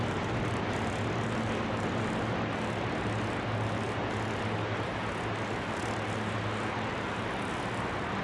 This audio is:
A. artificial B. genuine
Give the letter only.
B